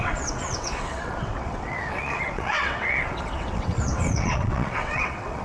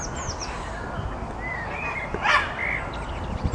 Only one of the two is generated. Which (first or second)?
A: first